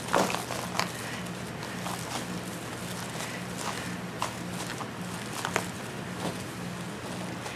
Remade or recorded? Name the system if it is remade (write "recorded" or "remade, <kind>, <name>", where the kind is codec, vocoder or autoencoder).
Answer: recorded